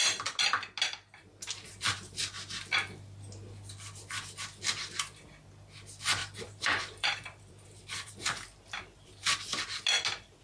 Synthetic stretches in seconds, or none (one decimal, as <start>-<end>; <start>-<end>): 6.2-8.1